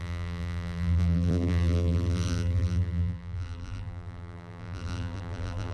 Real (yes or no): no